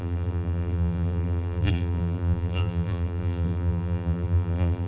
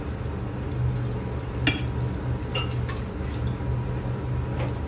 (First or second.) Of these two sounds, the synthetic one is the first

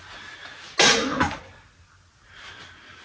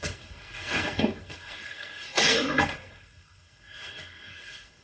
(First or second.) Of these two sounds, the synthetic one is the second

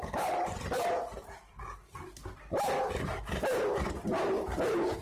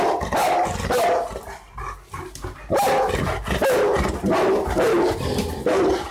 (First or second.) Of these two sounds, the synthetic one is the first